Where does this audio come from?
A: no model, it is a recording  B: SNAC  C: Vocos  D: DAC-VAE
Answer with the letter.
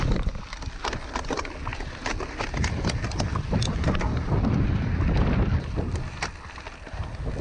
A